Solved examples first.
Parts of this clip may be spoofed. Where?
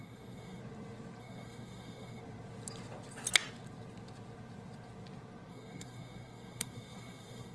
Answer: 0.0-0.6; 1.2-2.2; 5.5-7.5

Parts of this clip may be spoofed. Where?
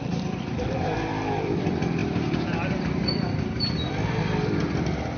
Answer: none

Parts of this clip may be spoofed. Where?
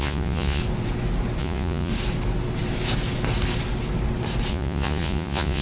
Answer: 0.0-0.6; 1.4-1.9; 4.5-5.6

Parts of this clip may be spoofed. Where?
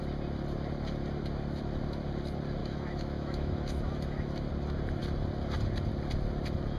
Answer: 2.6-4.5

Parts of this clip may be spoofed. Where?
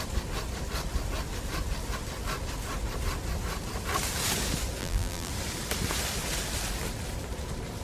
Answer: 4.8-5.3